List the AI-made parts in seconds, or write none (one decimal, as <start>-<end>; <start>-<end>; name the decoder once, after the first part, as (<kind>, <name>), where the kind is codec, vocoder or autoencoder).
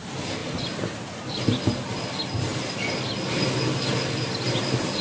none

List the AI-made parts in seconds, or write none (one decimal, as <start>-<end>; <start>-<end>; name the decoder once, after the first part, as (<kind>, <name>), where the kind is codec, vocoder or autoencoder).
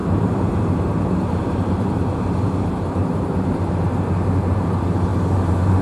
0.0-5.8 (vocoder, BigVGAN v2)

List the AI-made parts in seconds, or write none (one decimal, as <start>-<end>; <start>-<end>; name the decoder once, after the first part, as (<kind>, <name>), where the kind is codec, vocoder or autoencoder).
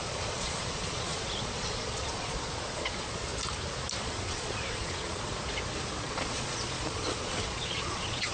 0.0-3.3 (vocoder, Vocos); 4.0-5.3; 6.0-8.3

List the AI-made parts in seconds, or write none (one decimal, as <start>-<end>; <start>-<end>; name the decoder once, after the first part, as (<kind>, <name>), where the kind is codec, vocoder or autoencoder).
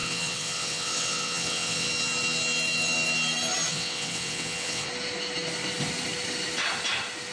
0.0-1.9 (vocoder, WaveNeXt); 3.7-4.9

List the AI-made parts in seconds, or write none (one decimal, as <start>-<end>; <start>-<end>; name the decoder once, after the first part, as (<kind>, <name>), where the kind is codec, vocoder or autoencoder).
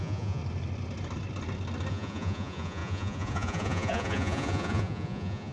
0.0-0.4 (vocoder, Vocos); 1.9-5.5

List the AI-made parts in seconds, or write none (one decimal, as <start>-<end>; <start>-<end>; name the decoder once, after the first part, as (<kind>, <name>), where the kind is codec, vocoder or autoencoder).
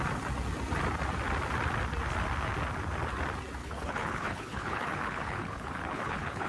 3.6-6.5 (codec, HILCodec)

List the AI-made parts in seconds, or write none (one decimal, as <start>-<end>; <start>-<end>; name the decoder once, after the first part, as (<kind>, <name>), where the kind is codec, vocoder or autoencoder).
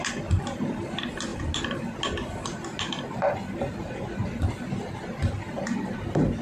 none